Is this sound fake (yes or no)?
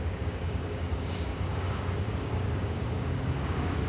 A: yes